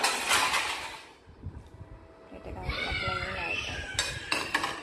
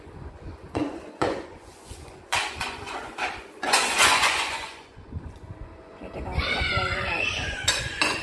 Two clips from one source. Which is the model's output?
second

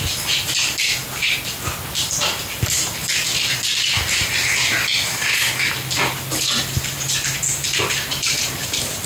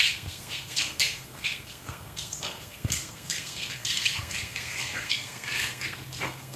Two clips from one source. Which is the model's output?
second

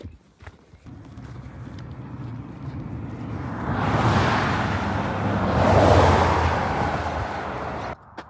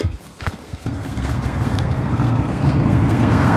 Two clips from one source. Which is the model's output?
second